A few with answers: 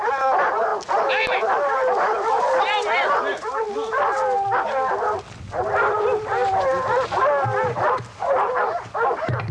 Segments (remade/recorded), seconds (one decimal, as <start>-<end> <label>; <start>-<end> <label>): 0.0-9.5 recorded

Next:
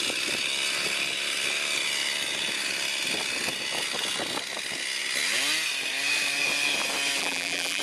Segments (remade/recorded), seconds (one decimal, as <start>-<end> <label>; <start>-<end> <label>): 0.0-7.2 recorded; 7.2-7.8 remade

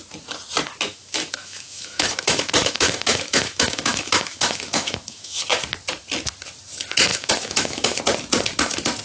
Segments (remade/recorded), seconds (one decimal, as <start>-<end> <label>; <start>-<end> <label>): 0.0-0.9 recorded; 0.9-5.4 remade; 5.4-7.1 recorded; 7.1-8.0 remade; 8.0-9.0 recorded

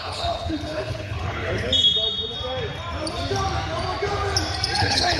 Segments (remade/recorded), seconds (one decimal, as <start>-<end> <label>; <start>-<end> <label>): 0.0-1.7 remade; 1.7-4.8 recorded; 4.8-5.2 remade